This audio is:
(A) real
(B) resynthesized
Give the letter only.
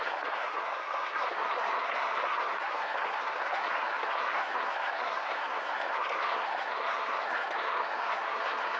B